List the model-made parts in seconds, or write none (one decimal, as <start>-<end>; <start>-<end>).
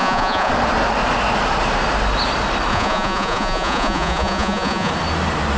0.0-0.5; 2.7-4.9